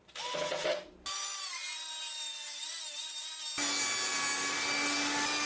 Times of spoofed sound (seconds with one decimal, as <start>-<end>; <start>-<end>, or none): none